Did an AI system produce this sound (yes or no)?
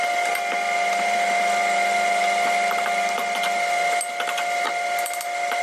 no